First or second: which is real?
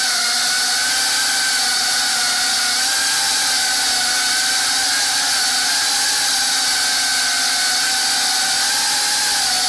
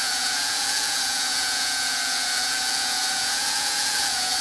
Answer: first